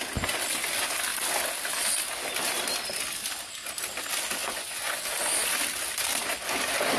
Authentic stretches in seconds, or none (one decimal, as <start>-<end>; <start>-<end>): 0.0-4.4; 5.0-7.0